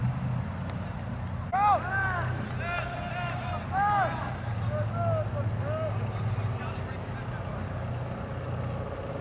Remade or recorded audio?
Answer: recorded